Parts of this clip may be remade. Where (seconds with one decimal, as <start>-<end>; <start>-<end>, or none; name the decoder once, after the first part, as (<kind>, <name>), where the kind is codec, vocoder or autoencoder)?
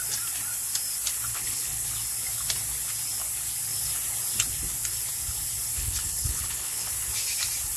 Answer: 1.3-1.9 (codec, HILCodec); 5.7-6.9